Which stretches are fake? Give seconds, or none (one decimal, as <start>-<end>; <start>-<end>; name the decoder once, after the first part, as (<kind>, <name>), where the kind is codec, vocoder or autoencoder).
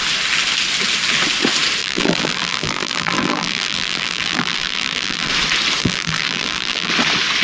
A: 1.8-5.3 (vocoder, BigVGAN v2); 5.8-6.9